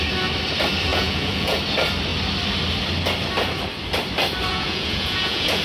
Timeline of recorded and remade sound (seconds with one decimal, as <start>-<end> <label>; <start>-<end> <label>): 0.0-0.9 recorded; 0.9-1.6 remade; 1.6-4.5 recorded; 4.5-5.6 remade